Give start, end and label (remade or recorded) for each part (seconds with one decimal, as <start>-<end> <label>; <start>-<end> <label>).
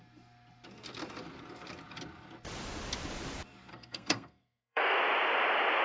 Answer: 0.0-3.7 recorded; 3.7-5.0 remade; 5.0-5.8 recorded